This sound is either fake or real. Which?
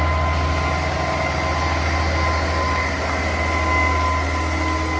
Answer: real